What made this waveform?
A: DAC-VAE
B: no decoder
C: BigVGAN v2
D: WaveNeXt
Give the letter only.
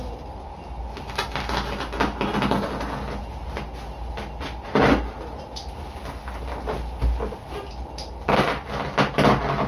B